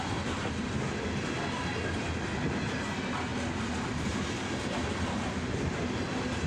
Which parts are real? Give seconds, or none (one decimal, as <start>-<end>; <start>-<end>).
0.0-6.5